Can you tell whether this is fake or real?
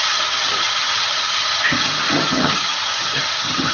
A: fake